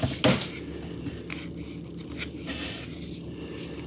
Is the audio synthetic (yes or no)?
no